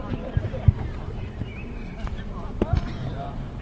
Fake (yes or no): yes